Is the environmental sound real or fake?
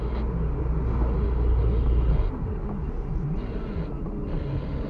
real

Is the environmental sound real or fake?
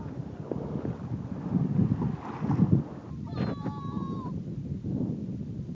real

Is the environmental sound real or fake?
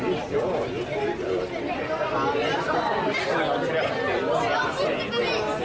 real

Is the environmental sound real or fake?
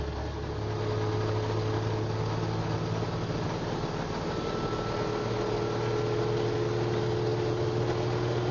real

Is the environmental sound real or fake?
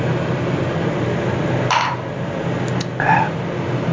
real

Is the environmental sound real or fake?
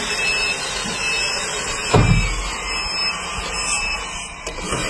real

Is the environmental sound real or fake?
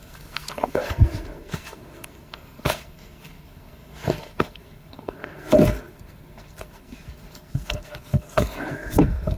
fake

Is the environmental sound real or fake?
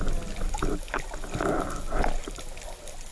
real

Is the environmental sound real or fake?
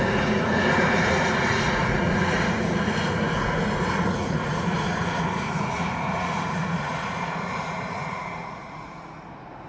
fake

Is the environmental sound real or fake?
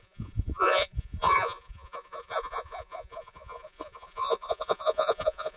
fake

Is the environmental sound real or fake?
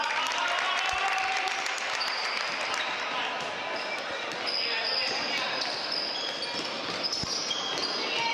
real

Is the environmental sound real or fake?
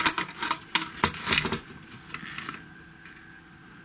real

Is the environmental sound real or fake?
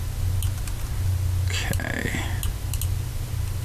real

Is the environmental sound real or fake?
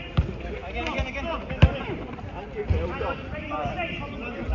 real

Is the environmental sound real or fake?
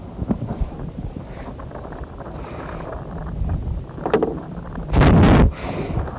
fake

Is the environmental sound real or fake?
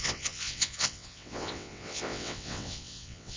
fake